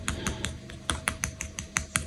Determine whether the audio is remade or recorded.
recorded